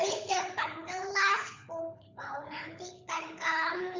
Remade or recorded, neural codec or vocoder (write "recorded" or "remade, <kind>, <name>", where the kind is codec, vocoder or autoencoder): remade, codec, HILCodec